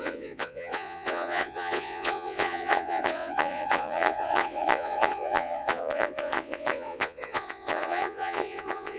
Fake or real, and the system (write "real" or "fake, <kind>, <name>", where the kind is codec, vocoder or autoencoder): fake, vocoder, Vocos